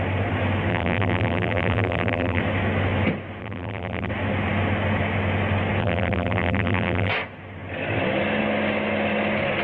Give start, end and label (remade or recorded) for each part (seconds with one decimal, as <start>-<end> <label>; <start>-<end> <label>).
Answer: 0.0-0.7 recorded; 0.7-2.4 remade; 2.4-3.4 recorded; 3.4-4.1 remade; 4.1-5.8 recorded; 5.8-7.1 remade; 7.1-9.6 recorded